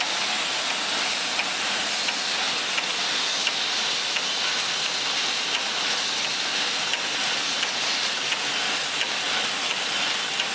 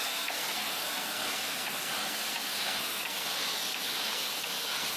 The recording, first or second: first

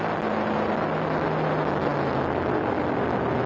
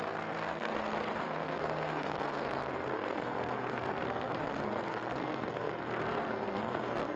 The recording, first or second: first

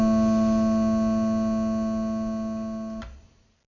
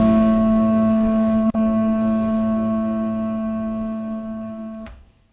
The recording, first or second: first